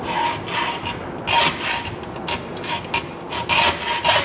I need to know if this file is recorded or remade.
recorded